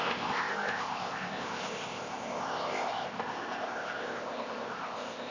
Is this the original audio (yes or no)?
no